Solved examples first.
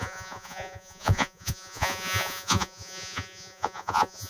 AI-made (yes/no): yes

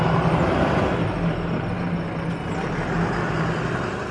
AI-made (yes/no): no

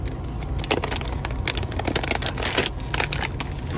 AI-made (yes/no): no